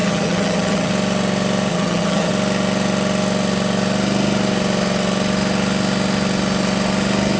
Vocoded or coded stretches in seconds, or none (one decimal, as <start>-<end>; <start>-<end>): 0.0-0.9; 1.7-2.3